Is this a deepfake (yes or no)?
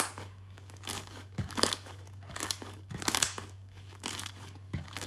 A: yes